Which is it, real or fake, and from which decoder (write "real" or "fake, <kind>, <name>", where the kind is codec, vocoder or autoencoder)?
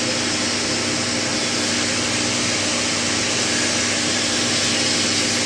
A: real